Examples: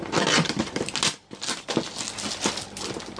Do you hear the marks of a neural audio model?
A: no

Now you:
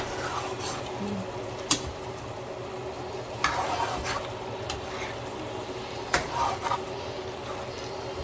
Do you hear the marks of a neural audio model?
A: no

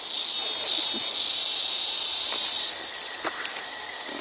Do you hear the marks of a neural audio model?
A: no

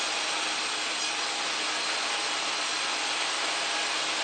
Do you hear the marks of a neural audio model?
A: no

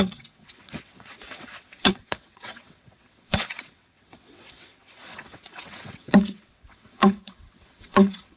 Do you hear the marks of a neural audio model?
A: yes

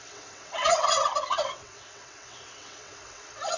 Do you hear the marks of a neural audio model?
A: yes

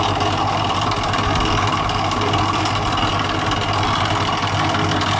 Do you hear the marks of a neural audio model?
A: no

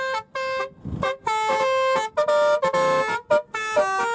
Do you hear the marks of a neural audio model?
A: no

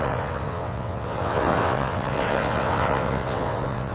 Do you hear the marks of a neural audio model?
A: yes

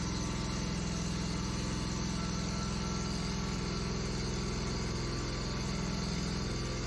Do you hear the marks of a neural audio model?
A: no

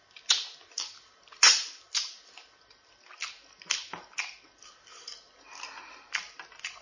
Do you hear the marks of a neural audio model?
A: no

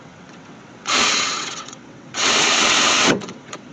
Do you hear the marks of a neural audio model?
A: yes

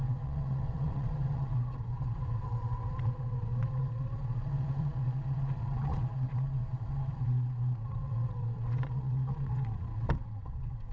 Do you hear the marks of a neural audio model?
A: yes